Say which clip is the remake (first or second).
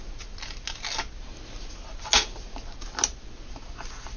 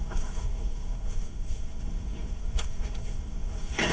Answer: second